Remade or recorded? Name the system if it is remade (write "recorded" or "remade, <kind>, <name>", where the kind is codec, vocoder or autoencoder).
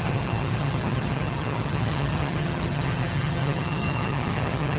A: remade, vocoder, HiFi-GAN